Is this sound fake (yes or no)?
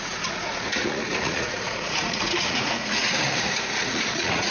yes